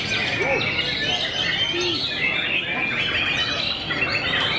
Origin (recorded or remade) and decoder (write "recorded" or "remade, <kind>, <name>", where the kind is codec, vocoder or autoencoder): recorded